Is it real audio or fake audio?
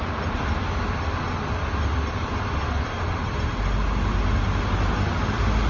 real